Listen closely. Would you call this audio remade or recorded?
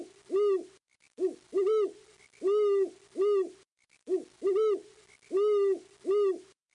recorded